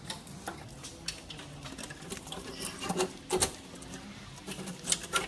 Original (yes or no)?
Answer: yes